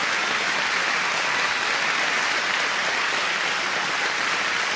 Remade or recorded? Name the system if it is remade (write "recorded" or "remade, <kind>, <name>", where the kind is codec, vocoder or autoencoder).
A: recorded